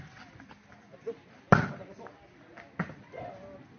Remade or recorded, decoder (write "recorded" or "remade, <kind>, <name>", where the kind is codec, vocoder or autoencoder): recorded